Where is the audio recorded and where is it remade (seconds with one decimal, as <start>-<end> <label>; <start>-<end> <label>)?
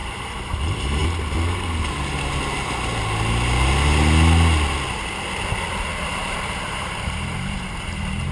0.0-1.0 remade; 1.0-6.0 recorded; 6.0-8.3 remade